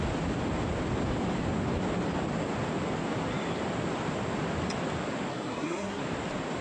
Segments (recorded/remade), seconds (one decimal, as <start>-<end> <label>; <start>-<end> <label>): 0.0-5.3 recorded; 5.3-6.0 remade; 6.0-6.6 recorded